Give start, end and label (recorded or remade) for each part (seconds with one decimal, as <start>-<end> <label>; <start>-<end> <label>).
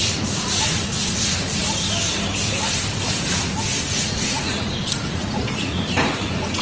0.0-1.6 remade; 1.6-3.8 recorded; 3.8-6.6 remade